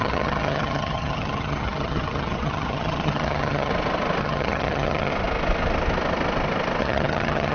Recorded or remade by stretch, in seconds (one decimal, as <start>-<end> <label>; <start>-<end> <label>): 0.0-3.7 remade; 3.7-4.2 recorded; 4.2-5.1 remade; 5.1-6.8 recorded; 6.8-7.5 remade